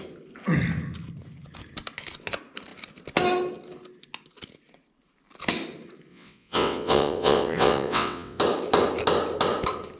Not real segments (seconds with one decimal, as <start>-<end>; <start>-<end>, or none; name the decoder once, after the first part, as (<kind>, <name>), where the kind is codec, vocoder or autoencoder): 6.1-8.4 (vocoder, WaveNeXt)